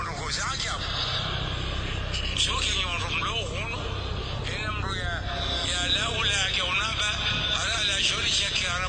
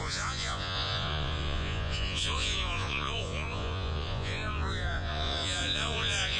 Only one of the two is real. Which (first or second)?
first